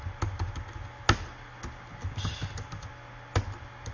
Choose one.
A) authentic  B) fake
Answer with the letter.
A